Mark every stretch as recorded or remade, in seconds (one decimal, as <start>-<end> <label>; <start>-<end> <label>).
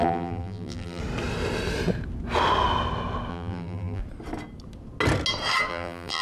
0.0-1.0 remade; 1.0-3.3 recorded; 3.3-4.0 remade; 4.0-5.7 recorded; 5.7-6.2 remade